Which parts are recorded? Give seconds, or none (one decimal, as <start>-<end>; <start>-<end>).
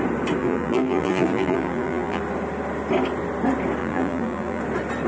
0.0-0.4; 2.2-3.8; 4.6-5.1